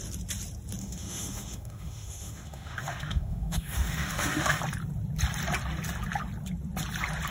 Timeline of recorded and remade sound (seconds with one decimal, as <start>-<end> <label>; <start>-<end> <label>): 0.0-0.8 recorded; 0.8-4.6 remade; 4.6-7.3 recorded